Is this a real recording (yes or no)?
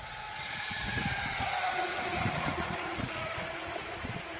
no